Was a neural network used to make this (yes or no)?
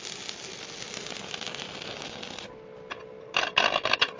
no